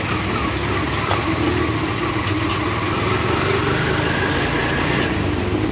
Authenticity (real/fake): real